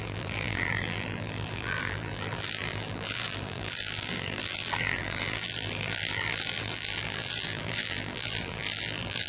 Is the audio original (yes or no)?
no